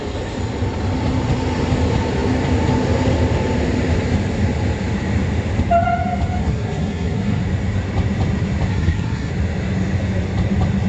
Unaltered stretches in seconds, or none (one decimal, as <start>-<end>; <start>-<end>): 0.0-6.4; 7.4-8.7; 9.3-10.9